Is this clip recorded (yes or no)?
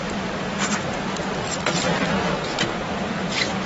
yes